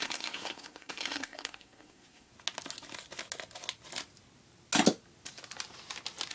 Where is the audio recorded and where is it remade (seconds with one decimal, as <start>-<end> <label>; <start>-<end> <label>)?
0.0-2.3 remade; 2.3-6.3 recorded